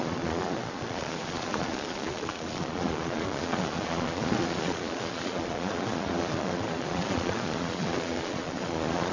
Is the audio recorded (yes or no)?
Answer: no